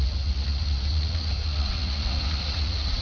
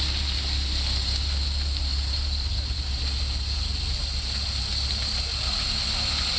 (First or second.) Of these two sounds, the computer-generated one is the first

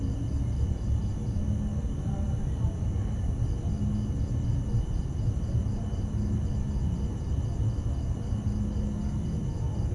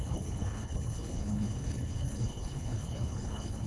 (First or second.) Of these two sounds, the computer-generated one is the second